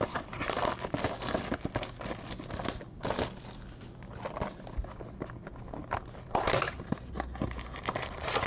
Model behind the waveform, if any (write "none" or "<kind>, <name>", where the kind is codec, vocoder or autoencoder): none